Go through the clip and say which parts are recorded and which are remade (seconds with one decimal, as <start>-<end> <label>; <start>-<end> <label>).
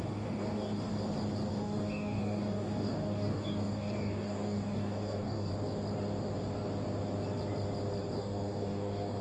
0.0-0.9 remade; 0.9-1.5 recorded; 1.5-5.5 remade; 5.5-8.2 recorded; 8.2-9.2 remade